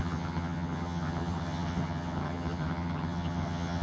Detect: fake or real fake